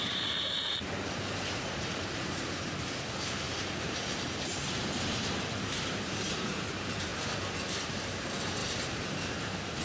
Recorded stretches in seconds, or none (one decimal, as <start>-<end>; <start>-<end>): none